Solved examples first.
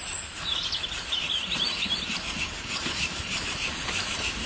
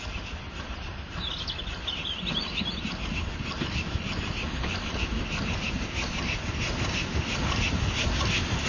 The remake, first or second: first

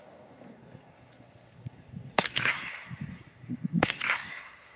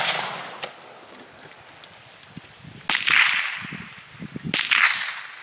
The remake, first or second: first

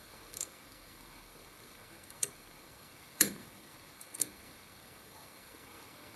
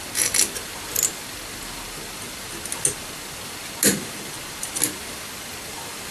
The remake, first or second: first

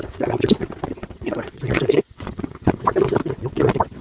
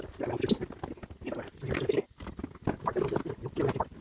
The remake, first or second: first